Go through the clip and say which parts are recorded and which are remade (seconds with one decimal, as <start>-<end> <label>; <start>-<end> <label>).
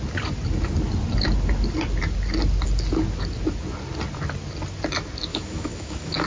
0.0-5.3 recorded; 5.3-6.3 remade